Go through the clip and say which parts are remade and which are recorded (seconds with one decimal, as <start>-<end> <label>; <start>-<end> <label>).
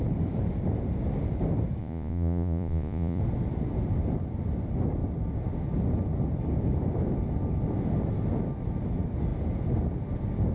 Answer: 0.0-1.8 recorded; 1.8-3.2 remade; 3.2-10.5 recorded